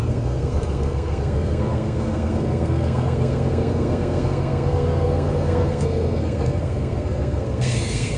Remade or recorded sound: remade